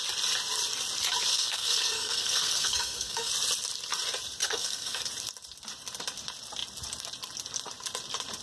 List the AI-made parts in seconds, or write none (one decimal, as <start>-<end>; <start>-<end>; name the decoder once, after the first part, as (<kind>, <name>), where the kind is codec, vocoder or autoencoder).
1.3-3.3 (codec, SNAC); 4.4-5.0